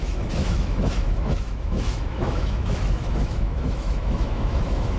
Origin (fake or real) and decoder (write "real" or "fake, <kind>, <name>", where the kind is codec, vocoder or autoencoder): fake, autoencoder, DAC-VAE